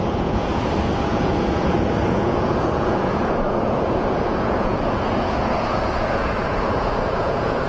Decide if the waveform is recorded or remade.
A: remade